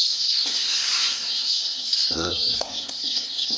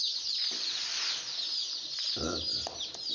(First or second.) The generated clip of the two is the first